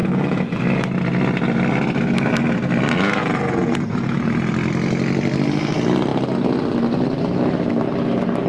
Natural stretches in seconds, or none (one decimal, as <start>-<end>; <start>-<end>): 0.6-3.2; 4.5-8.5